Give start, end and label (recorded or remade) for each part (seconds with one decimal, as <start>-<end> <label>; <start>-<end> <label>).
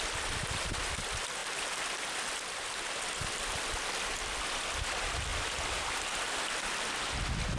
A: 0.0-5.3 recorded; 5.3-6.0 remade; 6.0-7.6 recorded